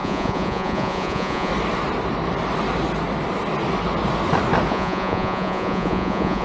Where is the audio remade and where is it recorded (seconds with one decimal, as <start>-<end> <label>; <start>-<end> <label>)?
0.0-1.5 remade; 1.5-4.7 recorded; 4.7-6.4 remade